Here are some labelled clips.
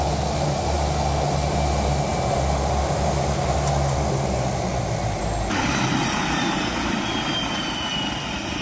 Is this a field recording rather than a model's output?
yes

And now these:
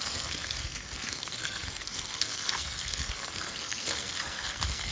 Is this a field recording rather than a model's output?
no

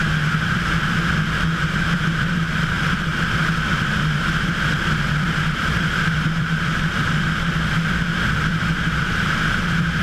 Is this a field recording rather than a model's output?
no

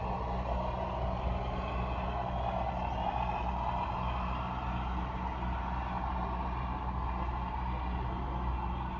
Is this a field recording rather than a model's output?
yes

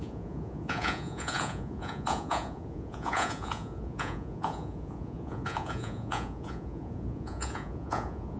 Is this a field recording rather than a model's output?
no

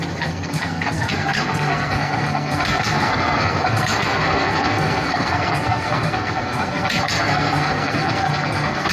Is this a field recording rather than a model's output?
no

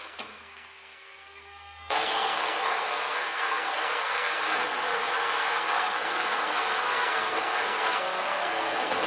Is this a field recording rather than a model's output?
no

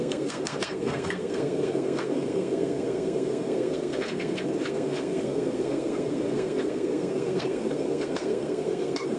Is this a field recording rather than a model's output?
no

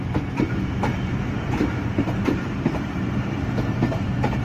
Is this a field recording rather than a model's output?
yes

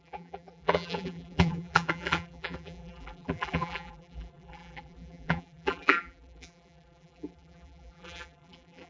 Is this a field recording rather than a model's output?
no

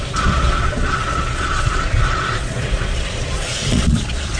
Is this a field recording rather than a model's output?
no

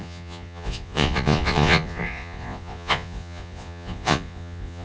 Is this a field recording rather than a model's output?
no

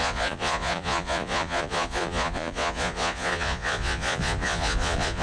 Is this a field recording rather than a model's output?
no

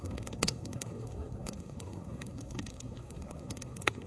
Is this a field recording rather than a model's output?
no